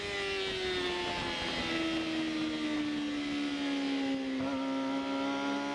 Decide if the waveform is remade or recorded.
recorded